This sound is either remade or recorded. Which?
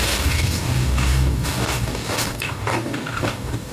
remade